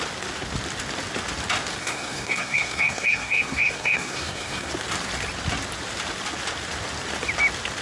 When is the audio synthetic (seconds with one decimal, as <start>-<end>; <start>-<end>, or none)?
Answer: 1.8-4.7